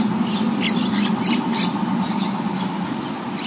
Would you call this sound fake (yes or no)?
no